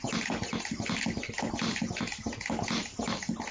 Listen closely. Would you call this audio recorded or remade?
recorded